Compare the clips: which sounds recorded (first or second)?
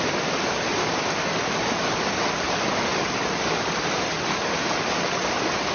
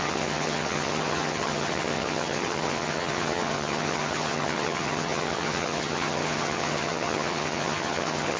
first